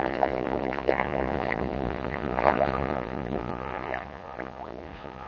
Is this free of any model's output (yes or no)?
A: no